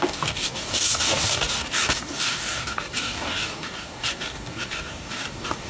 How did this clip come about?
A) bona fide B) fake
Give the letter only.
B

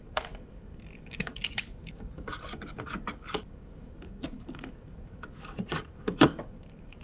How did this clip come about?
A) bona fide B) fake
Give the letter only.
B